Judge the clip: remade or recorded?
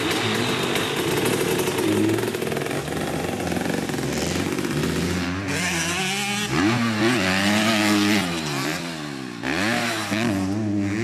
recorded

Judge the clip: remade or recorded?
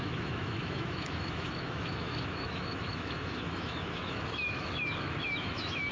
remade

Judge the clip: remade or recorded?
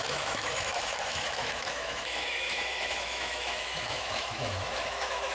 remade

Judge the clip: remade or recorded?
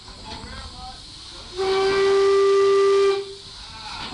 recorded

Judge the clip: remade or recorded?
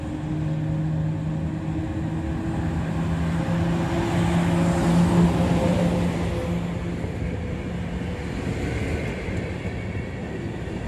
recorded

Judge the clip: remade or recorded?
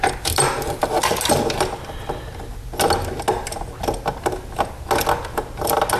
recorded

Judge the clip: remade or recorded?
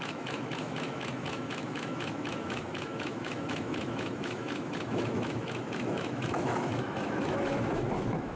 remade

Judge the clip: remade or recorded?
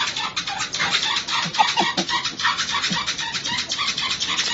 recorded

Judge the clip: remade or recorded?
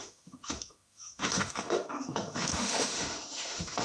remade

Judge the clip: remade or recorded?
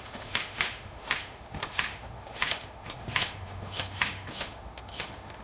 remade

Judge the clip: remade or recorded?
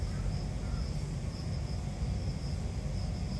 recorded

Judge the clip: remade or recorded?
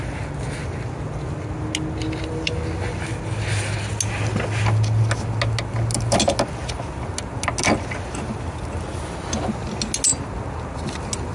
recorded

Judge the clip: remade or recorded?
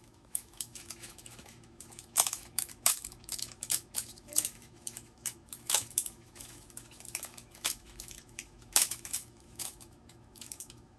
remade